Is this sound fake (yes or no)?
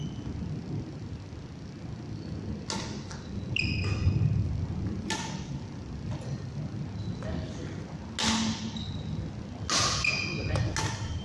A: no